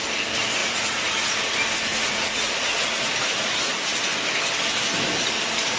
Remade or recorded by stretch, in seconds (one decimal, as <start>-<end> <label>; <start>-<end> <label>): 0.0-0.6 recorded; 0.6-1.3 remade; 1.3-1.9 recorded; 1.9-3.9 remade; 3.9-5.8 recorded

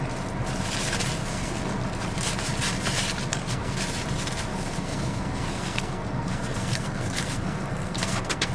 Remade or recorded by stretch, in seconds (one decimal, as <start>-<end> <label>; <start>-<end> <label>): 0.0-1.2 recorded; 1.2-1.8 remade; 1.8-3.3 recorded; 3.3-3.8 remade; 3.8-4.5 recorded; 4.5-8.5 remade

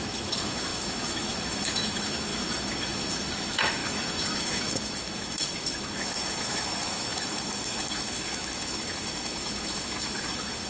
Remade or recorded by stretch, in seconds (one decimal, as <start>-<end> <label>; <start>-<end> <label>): 0.0-10.7 remade

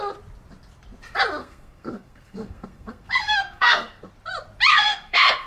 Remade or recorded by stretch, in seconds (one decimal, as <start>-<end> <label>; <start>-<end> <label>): 0.0-1.4 recorded; 1.4-4.1 remade; 4.1-4.7 recorded; 4.7-5.5 remade